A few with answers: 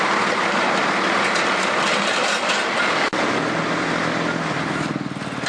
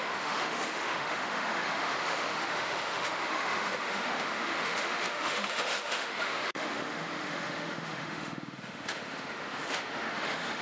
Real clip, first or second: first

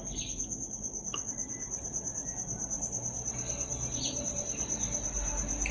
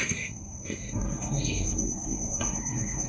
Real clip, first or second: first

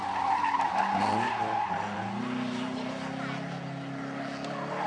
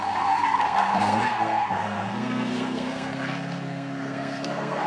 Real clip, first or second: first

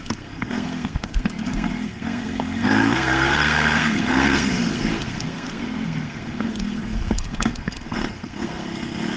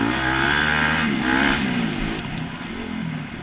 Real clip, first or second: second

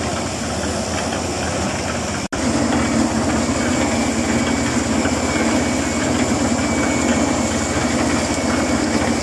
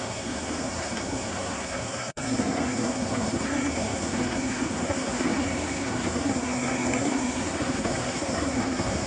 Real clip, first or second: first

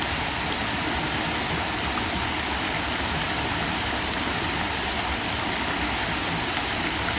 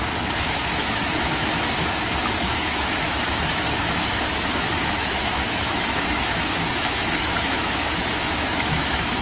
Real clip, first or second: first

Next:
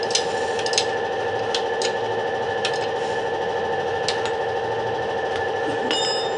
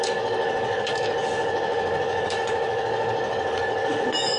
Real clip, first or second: first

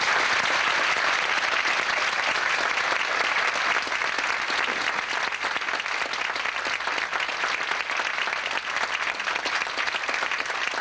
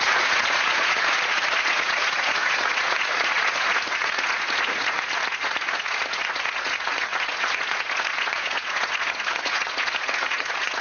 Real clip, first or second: first